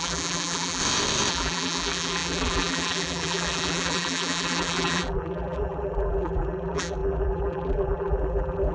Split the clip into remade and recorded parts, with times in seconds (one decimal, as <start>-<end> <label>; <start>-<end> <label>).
0.0-0.8 remade; 0.8-1.3 recorded; 1.3-8.7 remade